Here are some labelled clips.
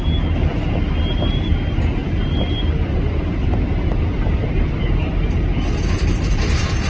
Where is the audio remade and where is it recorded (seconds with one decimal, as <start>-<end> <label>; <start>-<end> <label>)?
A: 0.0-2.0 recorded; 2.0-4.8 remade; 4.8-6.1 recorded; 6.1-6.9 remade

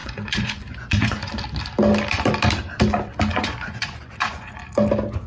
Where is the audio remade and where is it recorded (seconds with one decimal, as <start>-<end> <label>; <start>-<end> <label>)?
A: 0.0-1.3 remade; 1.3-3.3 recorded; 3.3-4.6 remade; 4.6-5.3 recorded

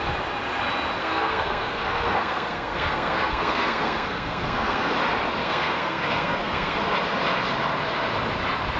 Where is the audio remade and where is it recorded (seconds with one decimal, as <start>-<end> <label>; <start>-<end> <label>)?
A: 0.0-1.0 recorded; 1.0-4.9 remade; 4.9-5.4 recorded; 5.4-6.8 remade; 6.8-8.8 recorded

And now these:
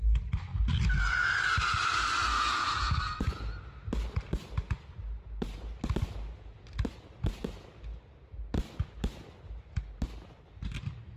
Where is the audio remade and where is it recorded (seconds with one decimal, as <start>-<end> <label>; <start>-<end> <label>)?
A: 0.0-2.2 recorded; 2.2-3.5 remade; 3.5-11.2 recorded